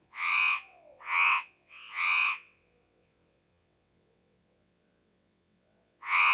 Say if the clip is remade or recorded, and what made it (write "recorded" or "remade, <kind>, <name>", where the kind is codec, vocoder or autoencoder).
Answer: remade, vocoder, WaveNeXt